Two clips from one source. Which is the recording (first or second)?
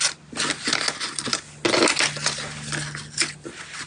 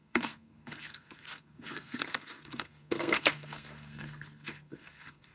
first